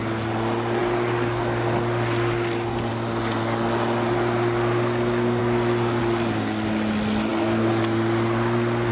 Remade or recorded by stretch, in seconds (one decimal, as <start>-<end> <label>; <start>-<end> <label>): 0.0-8.9 recorded